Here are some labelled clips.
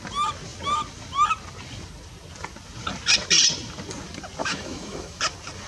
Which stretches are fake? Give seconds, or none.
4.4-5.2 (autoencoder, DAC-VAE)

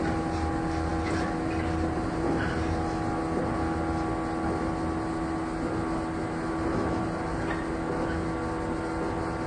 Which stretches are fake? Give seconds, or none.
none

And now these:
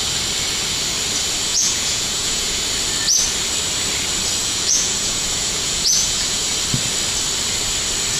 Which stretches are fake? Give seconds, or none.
1.5-2.6 (vocoder, Vocos); 4.4-6.5

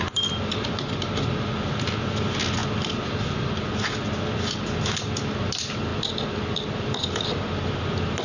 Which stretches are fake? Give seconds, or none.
none

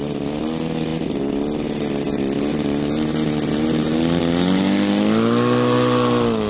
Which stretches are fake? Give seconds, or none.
none

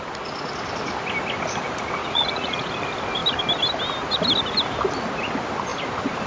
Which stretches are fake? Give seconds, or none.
2.0-2.7 (vocoder, Vocos)